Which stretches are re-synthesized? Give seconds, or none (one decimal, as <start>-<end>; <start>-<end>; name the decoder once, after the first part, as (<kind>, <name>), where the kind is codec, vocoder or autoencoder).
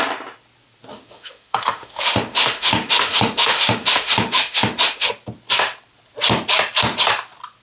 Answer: 0.9-5.1 (autoencoder, DAC-VAE)